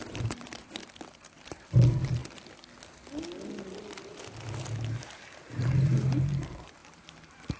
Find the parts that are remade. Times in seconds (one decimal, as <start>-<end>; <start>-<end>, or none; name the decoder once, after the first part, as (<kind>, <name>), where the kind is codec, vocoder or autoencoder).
0.0-0.8 (vocoder, BigVGAN v2); 1.5-2.2; 5.4-7.6